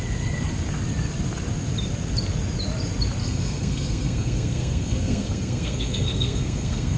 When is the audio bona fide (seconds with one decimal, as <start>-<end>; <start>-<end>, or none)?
0.0-3.2